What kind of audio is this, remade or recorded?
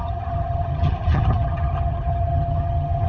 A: remade